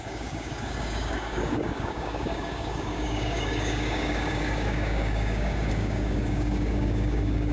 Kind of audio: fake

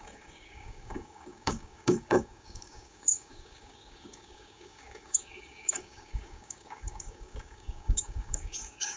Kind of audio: fake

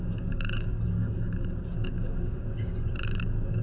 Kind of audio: fake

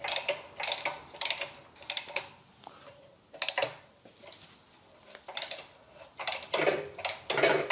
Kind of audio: real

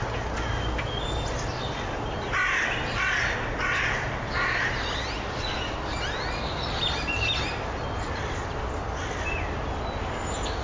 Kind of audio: real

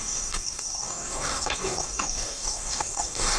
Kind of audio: fake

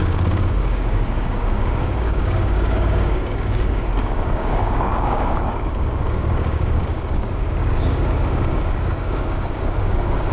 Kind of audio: fake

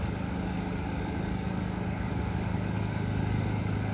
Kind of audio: fake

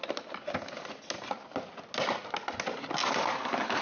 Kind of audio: real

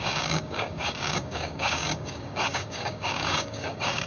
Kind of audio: fake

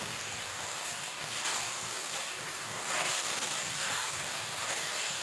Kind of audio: fake